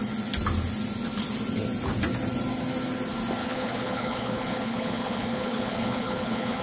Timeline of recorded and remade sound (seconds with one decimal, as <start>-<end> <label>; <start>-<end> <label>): 0.0-3.4 recorded; 3.4-6.6 remade